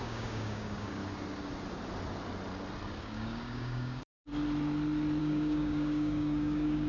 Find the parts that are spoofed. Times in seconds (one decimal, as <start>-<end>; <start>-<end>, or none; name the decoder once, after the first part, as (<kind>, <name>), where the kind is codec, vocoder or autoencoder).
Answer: 0.0-1.0 (codec, DAC); 3.0-4.3; 5.2-6.9